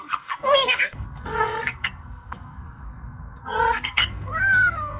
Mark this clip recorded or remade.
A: remade